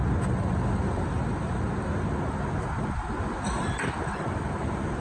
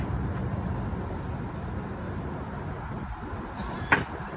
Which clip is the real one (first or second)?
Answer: first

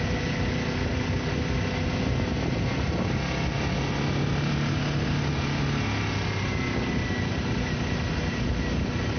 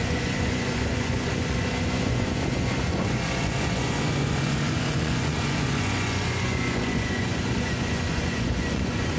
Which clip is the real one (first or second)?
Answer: first